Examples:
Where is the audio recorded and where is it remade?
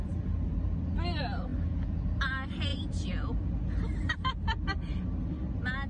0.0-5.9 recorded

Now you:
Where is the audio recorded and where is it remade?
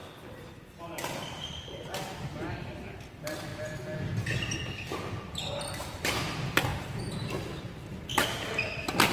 0.0-0.8 recorded; 0.8-3.5 remade; 3.5-5.6 recorded; 5.6-8.1 remade; 8.1-8.7 recorded; 8.7-9.1 remade